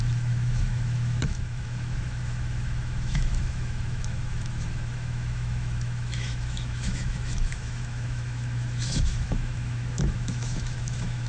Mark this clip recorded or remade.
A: remade